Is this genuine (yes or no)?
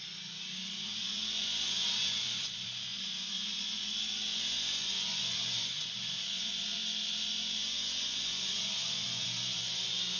no